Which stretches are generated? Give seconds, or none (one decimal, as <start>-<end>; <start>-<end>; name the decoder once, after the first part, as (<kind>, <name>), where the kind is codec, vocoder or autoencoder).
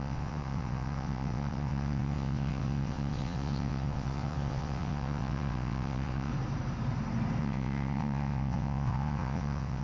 0.0-6.3 (vocoder, WaveNeXt); 7.4-9.8